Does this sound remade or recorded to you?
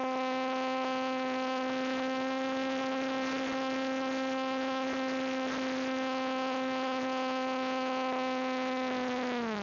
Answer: recorded